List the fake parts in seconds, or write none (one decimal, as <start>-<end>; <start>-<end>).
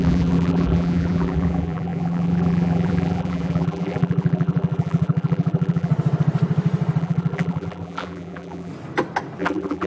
0.0-5.9; 7.0-8.7; 9.4-9.9